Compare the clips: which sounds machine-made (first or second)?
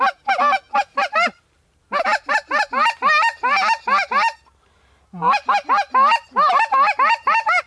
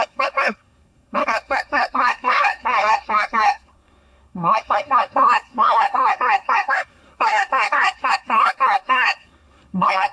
second